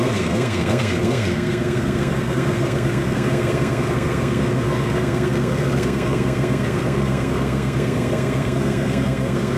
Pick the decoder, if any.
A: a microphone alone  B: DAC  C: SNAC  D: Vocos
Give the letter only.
C